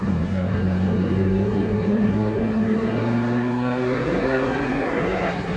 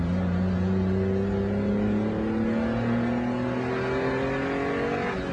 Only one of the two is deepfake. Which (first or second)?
first